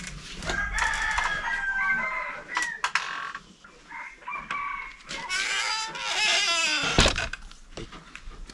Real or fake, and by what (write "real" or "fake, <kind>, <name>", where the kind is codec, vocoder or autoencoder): real